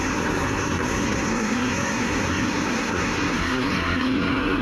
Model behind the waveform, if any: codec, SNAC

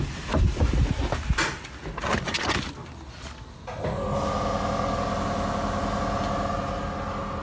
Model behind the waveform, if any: none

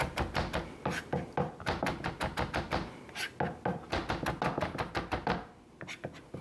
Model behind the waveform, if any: none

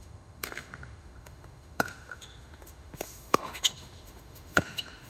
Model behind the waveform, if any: autoencoder, DAC-VAE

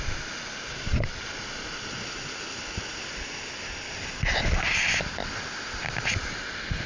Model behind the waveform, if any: none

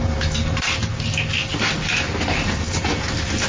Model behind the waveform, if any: none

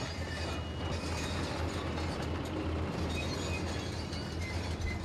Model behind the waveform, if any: none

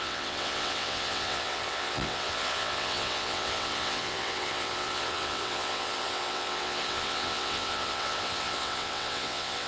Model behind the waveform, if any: vocoder, WaveNeXt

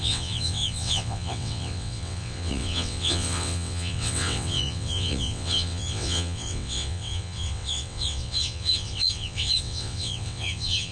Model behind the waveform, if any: vocoder, WaveNeXt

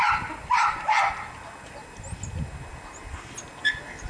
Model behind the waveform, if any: none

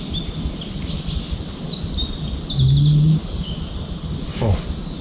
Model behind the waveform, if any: none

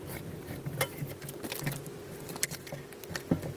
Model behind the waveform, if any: none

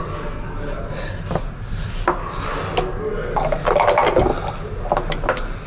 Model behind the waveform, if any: none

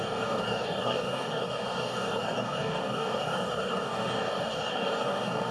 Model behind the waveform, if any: codec, DAC